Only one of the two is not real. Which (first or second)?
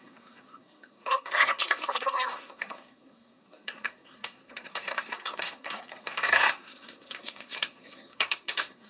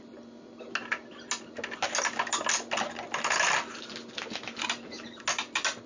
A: first